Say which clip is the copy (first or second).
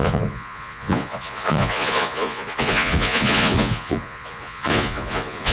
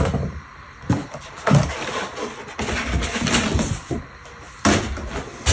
first